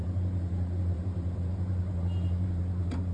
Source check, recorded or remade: remade